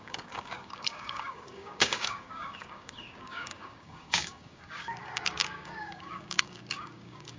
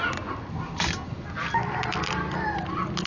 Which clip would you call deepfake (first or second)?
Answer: first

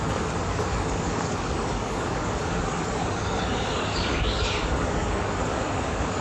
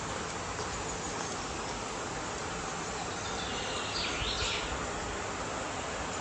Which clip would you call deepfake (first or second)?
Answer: first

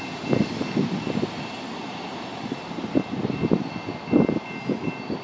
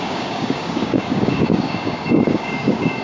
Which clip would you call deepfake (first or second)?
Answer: second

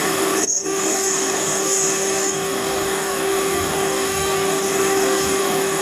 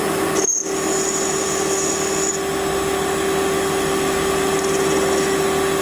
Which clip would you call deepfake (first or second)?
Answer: first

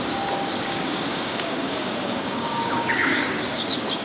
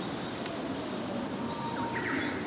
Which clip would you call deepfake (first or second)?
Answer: first